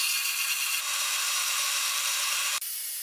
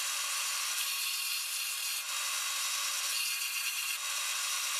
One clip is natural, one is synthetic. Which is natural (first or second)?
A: second